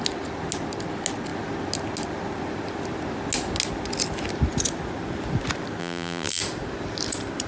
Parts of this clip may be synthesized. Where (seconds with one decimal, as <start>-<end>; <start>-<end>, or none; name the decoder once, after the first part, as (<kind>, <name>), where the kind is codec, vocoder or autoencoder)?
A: 5.8-6.4 (vocoder, BigVGAN v2)